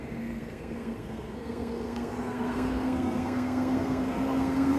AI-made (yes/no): yes